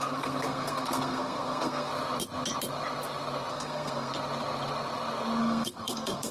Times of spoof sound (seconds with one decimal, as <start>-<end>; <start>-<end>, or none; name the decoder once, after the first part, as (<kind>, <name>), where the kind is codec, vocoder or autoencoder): 0.0-1.9 (codec, SNAC); 3.5-4.1; 5.4-6.3